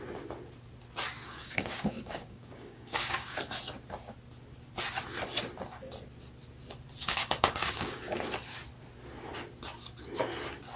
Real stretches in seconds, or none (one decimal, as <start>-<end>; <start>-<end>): 0.0-1.4; 3.4-7.0; 8.2-10.8